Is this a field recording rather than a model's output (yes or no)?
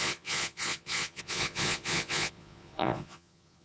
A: no